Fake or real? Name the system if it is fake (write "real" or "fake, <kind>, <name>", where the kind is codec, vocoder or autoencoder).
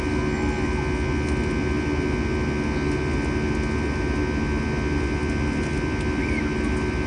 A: real